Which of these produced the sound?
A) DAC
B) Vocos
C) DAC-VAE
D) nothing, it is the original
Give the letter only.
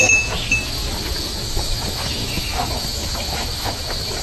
C